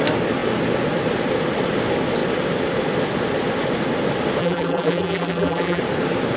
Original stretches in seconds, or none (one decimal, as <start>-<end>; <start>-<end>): 0.0-4.4; 5.8-6.4

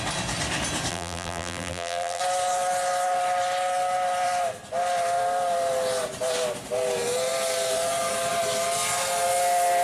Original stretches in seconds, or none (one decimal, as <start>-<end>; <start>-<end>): 0.0-0.9; 2.2-9.8

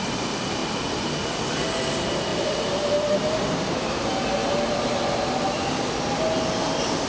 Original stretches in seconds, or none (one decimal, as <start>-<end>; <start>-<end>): 0.0-2.3; 3.3-4.4; 5.0-7.1

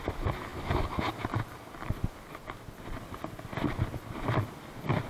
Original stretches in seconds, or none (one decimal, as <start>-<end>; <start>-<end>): 0.0-5.1

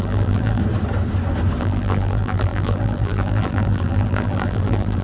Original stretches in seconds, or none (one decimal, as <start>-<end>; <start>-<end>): 0.6-1.6

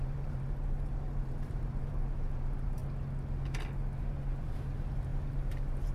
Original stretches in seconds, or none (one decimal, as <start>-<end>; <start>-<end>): 2.8-4.0

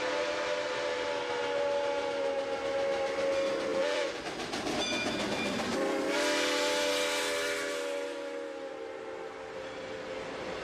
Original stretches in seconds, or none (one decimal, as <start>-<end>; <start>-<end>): 0.0-3.7; 4.2-10.6

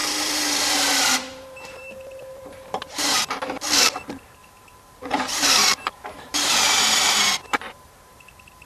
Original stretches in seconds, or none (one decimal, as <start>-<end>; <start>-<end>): 3.4-4.4